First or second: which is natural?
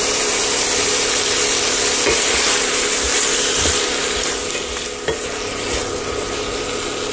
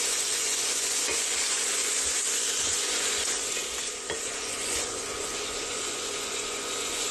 first